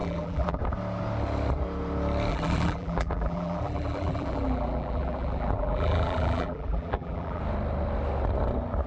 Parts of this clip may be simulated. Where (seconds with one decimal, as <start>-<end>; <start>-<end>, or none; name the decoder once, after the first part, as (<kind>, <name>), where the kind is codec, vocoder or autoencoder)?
0.0-0.6 (vocoder, BigVGAN v2); 2.3-7.4

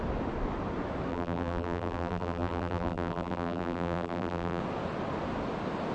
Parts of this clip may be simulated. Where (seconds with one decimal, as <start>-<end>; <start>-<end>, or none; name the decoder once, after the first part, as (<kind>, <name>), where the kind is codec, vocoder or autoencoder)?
1.1-4.6 (vocoder, BigVGAN v2)